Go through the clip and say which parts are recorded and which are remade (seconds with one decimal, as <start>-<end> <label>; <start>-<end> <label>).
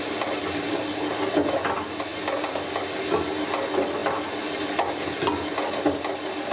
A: 0.0-6.5 recorded